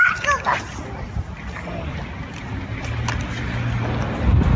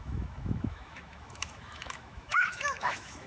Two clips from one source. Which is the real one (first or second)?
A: first